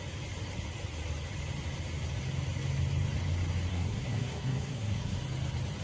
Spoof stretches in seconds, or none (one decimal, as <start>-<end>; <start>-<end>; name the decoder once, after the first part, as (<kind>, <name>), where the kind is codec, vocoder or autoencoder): 3.7-5.2 (codec, SNAC)